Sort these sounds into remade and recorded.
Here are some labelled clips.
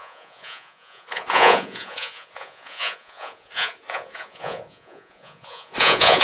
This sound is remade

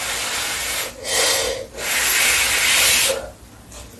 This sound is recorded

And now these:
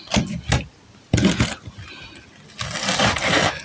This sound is recorded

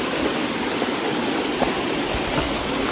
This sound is recorded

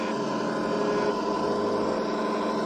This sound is recorded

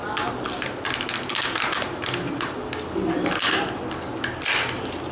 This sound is recorded